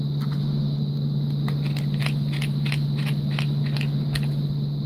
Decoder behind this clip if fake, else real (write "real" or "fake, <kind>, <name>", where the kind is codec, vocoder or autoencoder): real